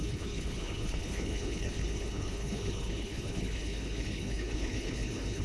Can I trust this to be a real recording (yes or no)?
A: no